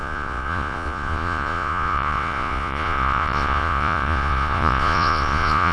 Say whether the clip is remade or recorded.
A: remade